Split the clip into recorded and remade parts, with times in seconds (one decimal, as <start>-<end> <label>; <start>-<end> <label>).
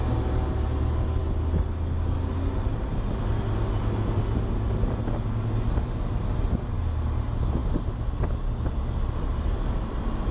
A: 0.0-10.3 recorded